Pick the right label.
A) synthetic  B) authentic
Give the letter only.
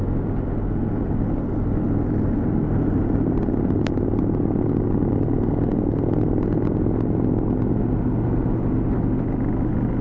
B